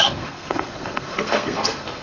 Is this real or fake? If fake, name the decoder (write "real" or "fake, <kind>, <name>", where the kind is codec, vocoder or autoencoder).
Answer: fake, codec, SNAC